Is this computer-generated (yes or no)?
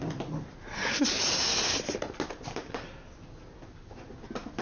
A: no